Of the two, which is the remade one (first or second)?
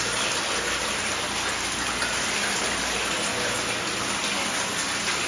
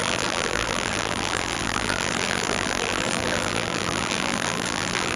second